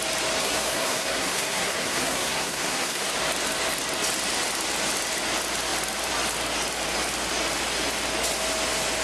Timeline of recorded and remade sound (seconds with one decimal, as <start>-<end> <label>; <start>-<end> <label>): 0.0-0.4 recorded; 0.4-3.1 remade; 3.1-9.0 recorded